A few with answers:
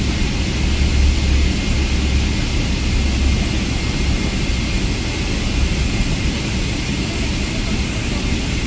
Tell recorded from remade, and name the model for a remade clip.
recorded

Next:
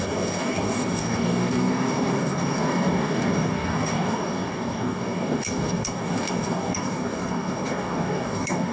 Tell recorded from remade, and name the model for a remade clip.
remade, codec, DAC